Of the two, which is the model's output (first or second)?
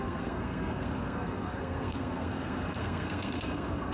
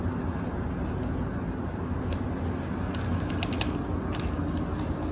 first